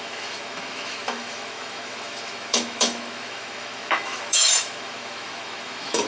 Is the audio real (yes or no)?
no